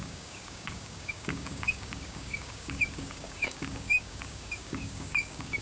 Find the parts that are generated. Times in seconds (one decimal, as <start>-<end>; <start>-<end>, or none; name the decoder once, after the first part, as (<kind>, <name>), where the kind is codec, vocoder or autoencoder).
0.0-5.6 (codec, DAC)